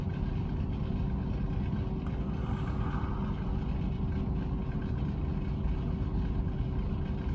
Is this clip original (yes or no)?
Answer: yes